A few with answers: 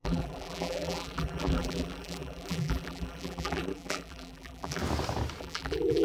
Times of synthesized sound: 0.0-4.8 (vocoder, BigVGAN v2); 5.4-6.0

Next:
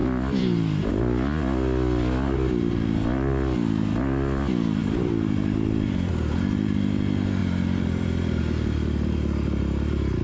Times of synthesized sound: 0.0-0.9 (vocoder, BigVGAN v2); 4.8-6.1; 7.4-8.4

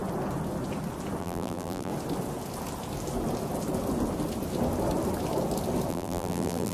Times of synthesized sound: 1.2-1.9 (vocoder, BigVGAN v2); 5.9-6.7

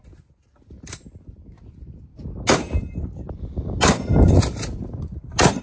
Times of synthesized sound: none

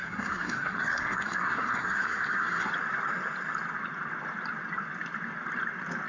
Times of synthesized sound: 0.0-2.7 (codec, SNAC)

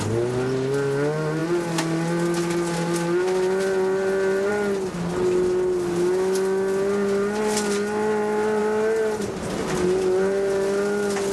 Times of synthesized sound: none

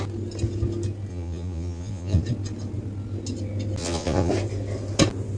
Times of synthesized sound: 1.1-2.2 (vocoder, Vocos); 3.8-4.3